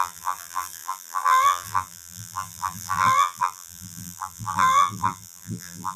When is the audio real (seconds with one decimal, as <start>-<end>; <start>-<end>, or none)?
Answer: none

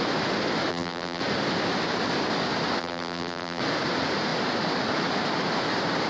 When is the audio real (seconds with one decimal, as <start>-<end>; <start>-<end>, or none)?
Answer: 0.0-0.7; 1.2-2.8; 3.6-6.1

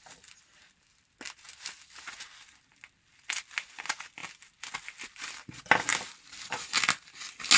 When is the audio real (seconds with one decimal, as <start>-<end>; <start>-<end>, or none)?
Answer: 0.0-7.6

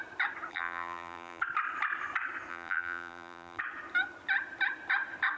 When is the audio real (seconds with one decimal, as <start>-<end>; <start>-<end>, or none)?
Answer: 0.0-0.5; 1.4-2.5; 3.6-5.4

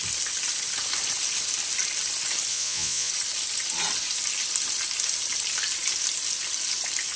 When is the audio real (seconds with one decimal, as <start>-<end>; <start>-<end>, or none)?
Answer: 0.0-2.5; 3.1-7.2

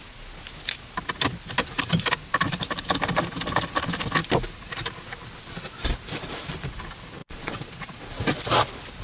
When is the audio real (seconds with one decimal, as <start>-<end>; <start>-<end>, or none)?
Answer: 0.0-7.2; 8.0-9.0

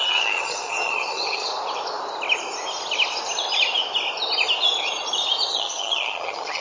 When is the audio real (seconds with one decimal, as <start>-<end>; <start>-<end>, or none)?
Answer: 1.5-5.5